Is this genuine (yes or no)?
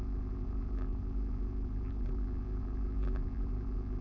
no